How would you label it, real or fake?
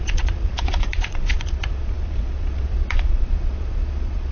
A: fake